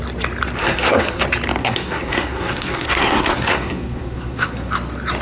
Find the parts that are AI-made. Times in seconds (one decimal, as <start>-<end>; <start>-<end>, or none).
0.6-1.2; 1.6-4.7